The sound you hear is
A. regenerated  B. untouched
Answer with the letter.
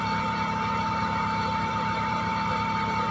A